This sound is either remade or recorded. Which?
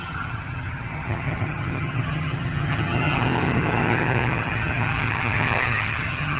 remade